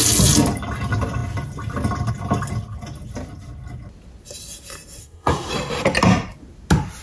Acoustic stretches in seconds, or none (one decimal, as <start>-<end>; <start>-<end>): 0.0-5.0; 5.5-7.0